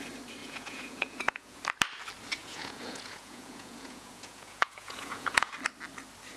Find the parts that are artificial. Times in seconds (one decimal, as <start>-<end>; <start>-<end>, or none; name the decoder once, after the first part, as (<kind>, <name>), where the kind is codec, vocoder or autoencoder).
0.4-1.6 (vocoder, Vocos); 2.4-5.5